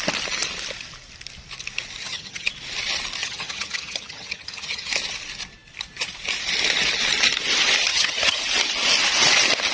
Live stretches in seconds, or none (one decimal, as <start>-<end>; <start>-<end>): 0.0-2.0; 2.5-3.2; 4.9-7.9; 8.4-9.7